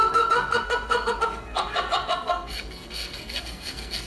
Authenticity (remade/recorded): remade